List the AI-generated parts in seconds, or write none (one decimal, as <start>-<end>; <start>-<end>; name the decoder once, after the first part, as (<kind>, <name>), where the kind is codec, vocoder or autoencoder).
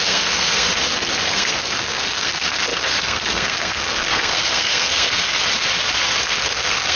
0.0-0.7 (codec, SNAC); 1.3-5.4; 6.2-7.0